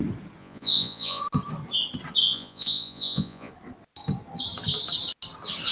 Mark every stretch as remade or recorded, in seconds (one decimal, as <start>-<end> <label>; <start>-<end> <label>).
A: 0.0-0.4 recorded; 0.4-1.2 remade; 1.2-2.2 recorded; 2.2-3.5 remade; 3.5-5.7 recorded